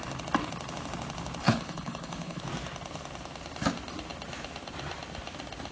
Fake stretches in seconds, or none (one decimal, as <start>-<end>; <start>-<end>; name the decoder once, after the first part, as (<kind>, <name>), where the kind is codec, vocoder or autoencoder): 1.4-2.4 (codec, HILCodec)